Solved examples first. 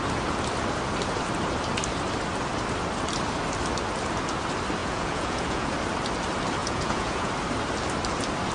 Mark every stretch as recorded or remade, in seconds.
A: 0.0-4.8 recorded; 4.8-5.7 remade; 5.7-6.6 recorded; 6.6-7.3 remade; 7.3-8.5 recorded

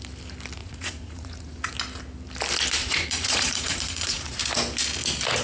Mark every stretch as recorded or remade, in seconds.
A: 0.0-0.6 recorded; 0.6-1.7 remade; 1.7-2.8 recorded; 2.8-4.4 remade; 4.4-5.4 recorded